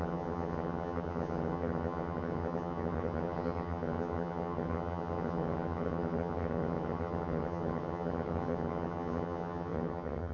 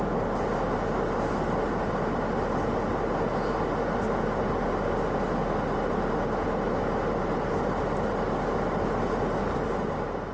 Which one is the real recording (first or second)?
second